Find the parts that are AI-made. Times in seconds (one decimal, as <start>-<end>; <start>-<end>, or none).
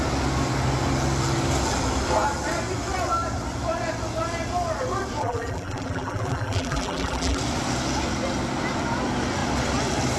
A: 5.2-7.4